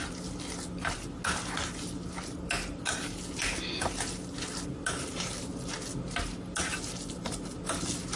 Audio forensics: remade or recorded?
recorded